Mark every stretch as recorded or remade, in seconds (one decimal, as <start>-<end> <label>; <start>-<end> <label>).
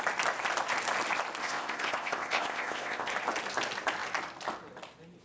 0.0-1.4 recorded; 1.4-3.1 remade; 3.1-5.2 recorded